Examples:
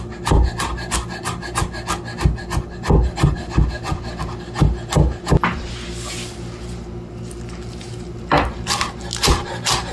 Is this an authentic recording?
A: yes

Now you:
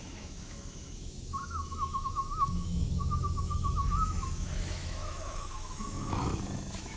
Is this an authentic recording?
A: no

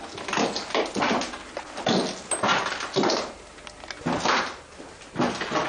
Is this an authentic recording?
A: yes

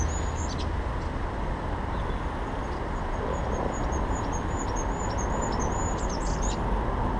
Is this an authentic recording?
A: yes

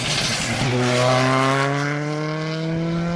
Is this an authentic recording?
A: yes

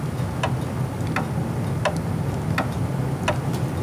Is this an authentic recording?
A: yes